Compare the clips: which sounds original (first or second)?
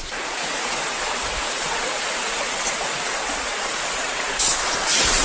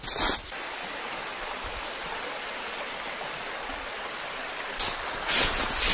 second